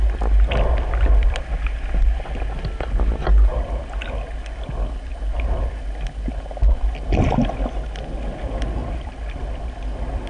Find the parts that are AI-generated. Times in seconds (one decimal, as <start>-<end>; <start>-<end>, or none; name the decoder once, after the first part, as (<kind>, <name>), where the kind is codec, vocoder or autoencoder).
none